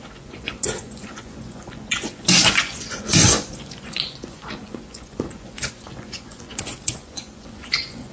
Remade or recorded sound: remade